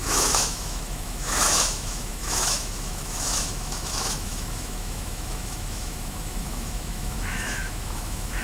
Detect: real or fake fake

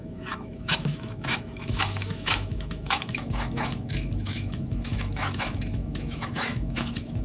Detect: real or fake fake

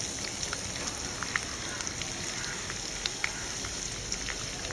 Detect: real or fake real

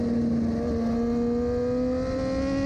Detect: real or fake real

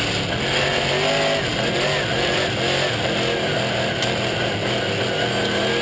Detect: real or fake real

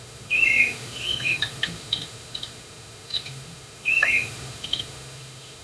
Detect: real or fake fake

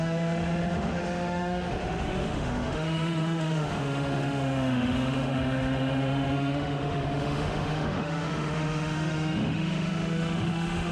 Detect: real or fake fake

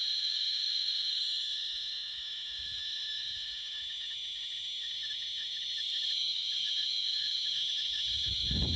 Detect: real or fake fake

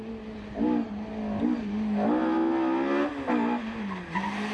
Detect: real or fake real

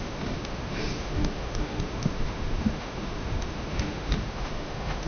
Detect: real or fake fake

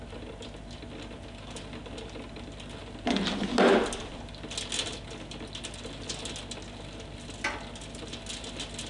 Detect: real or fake real